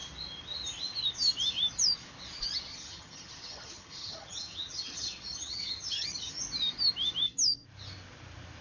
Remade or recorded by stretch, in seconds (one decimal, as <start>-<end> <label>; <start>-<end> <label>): 0.0-2.7 recorded; 2.7-6.4 remade; 6.4-8.6 recorded